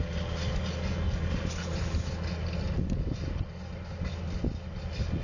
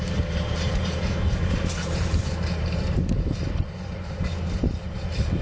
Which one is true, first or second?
first